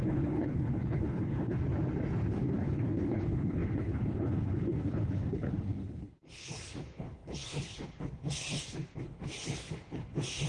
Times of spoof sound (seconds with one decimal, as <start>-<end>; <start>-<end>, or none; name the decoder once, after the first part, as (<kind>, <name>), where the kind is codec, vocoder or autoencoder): 0.0-1.6 (codec, HILCodec); 2.3-10.5

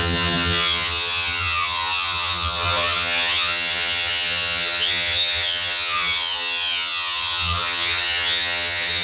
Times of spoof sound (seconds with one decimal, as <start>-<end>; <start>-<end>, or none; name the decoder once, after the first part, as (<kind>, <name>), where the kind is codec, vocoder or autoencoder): 0.0-9.0 (vocoder, HiFi-GAN)

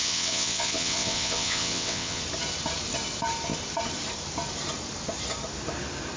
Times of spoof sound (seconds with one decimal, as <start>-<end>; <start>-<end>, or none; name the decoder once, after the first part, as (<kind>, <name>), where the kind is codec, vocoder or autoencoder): 0.0-2.2 (vocoder, WaveNeXt)